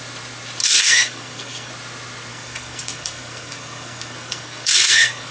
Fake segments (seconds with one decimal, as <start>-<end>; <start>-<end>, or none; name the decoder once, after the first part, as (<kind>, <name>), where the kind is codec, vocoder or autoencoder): 0.6-1.7 (codec, SNAC); 2.3-5.3